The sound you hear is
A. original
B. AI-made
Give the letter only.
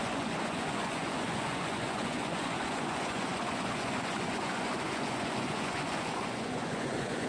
B